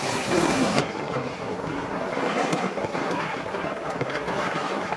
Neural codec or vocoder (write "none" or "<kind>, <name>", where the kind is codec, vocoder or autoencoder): codec, SNAC